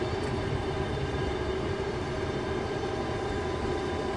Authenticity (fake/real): fake